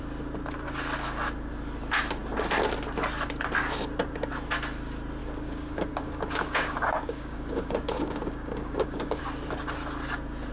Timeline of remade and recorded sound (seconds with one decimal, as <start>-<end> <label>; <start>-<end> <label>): 0.0-5.2 recorded; 5.2-9.2 remade; 9.2-10.5 recorded